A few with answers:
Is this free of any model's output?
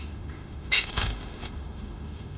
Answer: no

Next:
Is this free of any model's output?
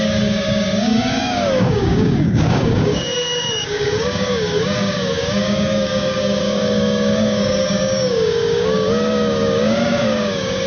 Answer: no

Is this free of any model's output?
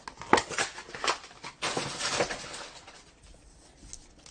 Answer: yes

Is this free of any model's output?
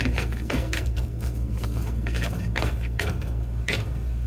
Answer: no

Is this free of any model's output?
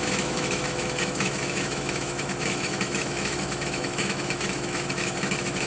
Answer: no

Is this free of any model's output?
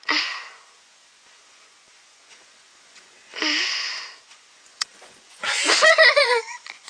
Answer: no